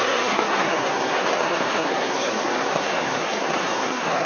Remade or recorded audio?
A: remade